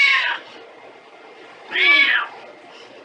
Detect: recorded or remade recorded